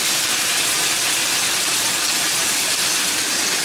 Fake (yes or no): no